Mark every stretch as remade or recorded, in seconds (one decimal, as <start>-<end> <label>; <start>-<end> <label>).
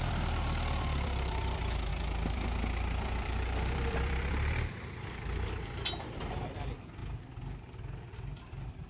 0.0-7.0 remade; 7.0-8.5 recorded; 8.5-8.9 remade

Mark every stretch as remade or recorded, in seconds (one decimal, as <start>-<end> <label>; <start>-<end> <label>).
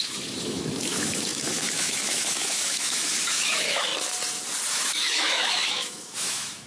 0.0-3.9 remade; 3.9-4.7 recorded; 4.7-6.7 remade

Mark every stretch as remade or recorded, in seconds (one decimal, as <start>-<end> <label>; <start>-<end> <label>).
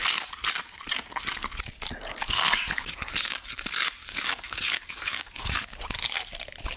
0.0-2.2 recorded; 2.2-5.8 remade; 5.8-6.8 recorded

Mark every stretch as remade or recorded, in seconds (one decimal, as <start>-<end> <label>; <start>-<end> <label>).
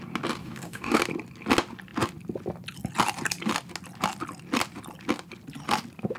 0.0-0.4 recorded; 0.4-1.0 remade; 1.0-6.2 recorded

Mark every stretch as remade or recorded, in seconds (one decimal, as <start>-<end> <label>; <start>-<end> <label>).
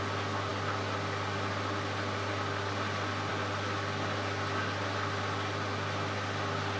0.0-6.8 recorded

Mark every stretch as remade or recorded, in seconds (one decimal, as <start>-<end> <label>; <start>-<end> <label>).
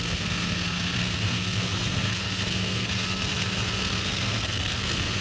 0.0-5.2 remade